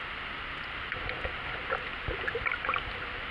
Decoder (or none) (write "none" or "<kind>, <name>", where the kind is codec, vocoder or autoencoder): none